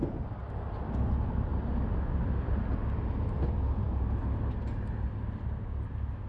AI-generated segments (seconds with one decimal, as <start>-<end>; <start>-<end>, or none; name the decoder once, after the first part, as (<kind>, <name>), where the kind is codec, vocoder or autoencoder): none

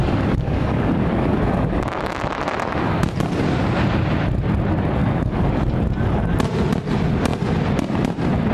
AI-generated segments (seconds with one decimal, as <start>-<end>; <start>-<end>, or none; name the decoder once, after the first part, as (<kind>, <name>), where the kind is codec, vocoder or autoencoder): 0.0-2.2 (codec, DAC); 5.0-5.6

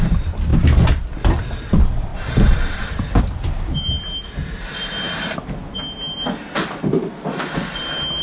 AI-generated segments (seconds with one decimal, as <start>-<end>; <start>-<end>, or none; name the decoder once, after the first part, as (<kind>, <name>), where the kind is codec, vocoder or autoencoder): none

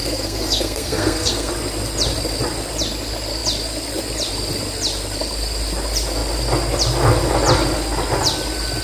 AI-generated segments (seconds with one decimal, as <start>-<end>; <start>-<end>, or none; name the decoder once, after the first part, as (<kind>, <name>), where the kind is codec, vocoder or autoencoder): 0.0-1.5 (codec, SNAC)

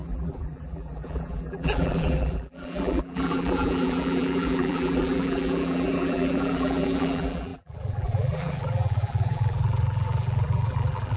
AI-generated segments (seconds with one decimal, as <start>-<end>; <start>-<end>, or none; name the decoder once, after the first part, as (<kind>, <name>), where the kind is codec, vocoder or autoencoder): 0.0-11.2 (vocoder, BigVGAN v2)

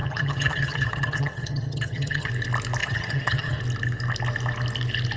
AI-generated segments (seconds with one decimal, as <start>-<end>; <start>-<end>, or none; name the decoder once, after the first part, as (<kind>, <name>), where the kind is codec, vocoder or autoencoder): 0.0-2.3 (vocoder, HiFi-GAN); 2.8-3.6

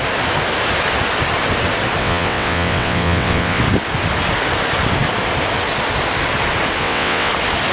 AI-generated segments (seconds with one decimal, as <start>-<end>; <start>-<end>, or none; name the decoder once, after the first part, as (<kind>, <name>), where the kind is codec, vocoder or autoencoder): 2.0-3.6 (vocoder, WaveNeXt); 6.8-7.3